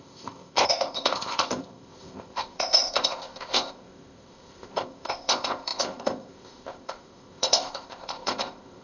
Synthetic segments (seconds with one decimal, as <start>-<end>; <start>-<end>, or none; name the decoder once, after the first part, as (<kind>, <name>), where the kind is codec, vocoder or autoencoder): 0.0-8.8 (codec, ZipCodec)